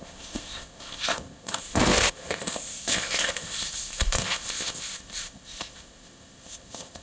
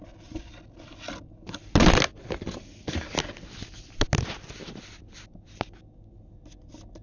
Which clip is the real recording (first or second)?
second